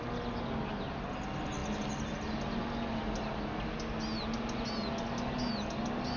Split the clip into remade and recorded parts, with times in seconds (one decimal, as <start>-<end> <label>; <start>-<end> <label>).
0.0-6.2 recorded